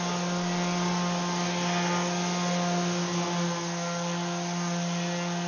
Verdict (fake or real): real